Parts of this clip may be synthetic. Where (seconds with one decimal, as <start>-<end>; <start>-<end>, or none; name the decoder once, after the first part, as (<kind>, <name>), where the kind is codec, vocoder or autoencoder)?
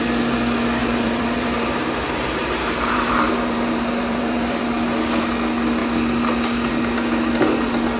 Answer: 0.8-4.6 (vocoder, BigVGAN v2)